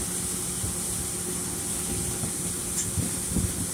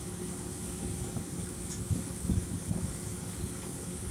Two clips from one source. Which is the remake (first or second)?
second